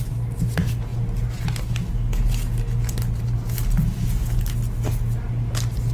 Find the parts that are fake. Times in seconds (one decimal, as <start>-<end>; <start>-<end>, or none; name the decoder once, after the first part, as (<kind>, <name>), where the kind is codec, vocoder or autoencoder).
none